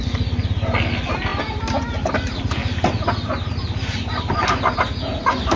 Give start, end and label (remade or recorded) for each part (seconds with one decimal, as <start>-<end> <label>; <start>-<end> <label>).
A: 0.0-5.6 recorded